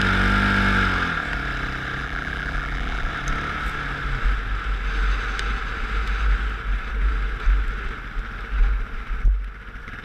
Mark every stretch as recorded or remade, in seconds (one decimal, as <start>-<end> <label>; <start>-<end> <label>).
0.0-2.0 recorded; 2.0-3.1 remade; 3.1-10.0 recorded